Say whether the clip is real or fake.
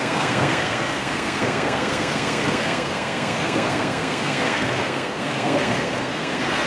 fake